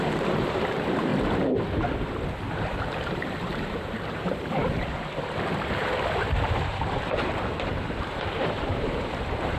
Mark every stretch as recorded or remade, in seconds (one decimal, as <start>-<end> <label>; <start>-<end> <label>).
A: 0.0-1.1 remade; 1.1-2.5 recorded; 2.5-4.6 remade; 4.6-6.3 recorded; 6.3-9.6 remade